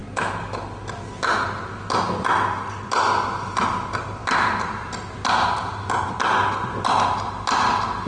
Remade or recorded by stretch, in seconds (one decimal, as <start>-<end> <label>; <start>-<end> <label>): 0.0-8.1 recorded